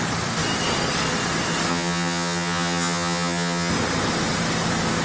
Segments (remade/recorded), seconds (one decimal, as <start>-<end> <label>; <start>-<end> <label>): 0.0-1.7 recorded; 1.7-3.7 remade; 3.7-5.0 recorded